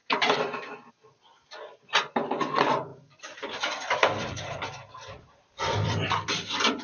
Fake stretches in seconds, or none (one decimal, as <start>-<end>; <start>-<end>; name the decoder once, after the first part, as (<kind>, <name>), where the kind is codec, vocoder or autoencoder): 2.9-6.8 (vocoder, BigVGAN v2)